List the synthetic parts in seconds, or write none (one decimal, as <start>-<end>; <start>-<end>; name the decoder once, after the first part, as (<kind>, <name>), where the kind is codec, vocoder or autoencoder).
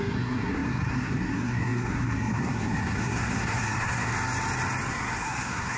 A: 0.0-4.1 (codec, SNAC); 4.9-5.8